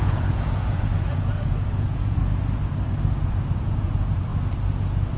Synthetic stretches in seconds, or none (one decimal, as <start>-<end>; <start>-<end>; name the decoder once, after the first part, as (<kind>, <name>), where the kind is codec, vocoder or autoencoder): 0.0-2.2 (vocoder, Vocos); 3.1-4.3